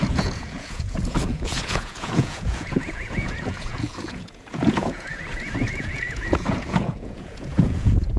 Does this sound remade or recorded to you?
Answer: remade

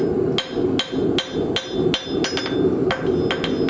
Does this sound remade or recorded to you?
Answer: recorded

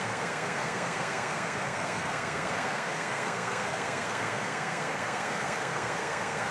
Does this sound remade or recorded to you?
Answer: remade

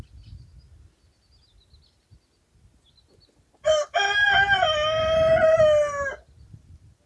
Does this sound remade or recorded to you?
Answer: recorded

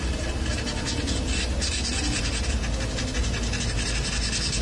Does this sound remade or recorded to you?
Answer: recorded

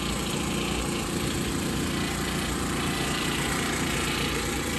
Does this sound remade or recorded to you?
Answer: remade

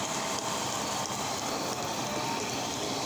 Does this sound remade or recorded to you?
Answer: recorded